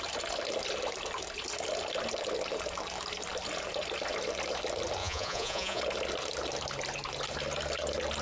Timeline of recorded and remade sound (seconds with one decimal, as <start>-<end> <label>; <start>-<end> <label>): 0.0-5.0 recorded; 5.0-5.8 remade; 5.8-8.2 recorded